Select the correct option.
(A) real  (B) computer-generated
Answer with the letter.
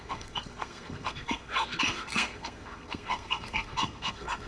B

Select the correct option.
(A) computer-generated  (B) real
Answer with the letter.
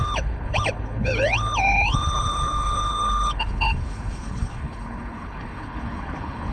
A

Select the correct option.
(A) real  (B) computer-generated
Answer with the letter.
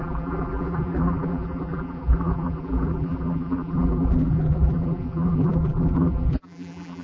B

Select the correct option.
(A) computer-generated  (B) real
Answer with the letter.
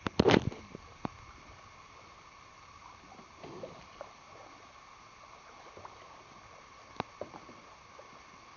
B